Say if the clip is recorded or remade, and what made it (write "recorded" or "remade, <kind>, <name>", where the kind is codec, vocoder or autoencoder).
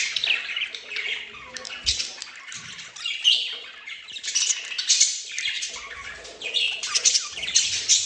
remade, vocoder, BigVGAN v2